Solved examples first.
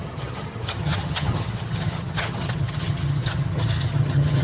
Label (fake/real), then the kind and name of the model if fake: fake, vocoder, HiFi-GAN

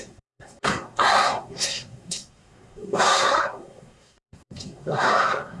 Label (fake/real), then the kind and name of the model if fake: fake, codec, SNAC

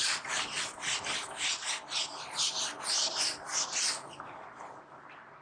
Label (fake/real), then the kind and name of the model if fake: real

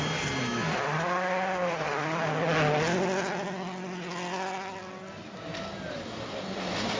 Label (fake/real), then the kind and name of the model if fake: real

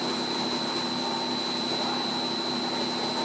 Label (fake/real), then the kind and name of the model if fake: real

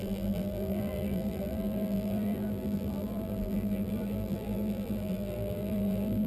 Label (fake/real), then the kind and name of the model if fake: fake, vocoder, BigVGAN v2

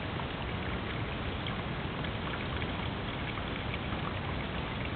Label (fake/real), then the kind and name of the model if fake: real